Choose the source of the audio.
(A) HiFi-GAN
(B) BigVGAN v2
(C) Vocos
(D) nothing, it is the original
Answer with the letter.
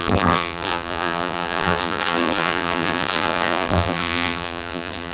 B